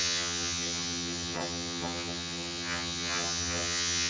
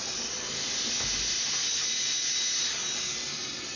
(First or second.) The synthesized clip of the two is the first